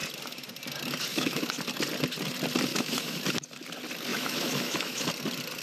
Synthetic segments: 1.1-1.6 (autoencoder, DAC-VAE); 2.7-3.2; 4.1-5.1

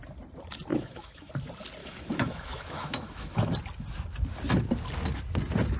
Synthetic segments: 0.7-1.3 (autoencoder, DAC-VAE); 1.8-3.5

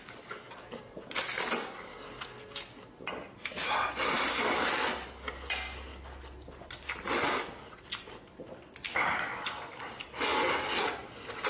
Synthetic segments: none